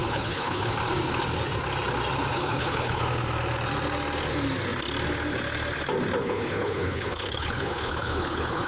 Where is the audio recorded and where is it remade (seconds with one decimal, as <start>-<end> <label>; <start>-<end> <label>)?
0.0-0.7 remade; 0.7-2.3 recorded; 2.3-3.0 remade; 3.0-6.2 recorded; 6.2-8.7 remade